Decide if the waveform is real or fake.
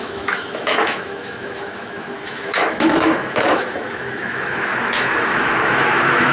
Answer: fake